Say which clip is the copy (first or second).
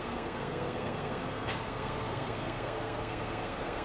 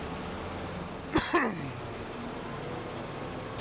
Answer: first